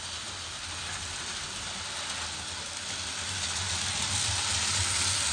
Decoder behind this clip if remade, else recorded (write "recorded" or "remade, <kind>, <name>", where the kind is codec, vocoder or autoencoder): recorded